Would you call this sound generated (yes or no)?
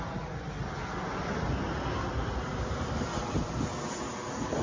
no